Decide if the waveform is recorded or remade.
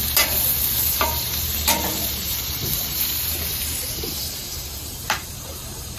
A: remade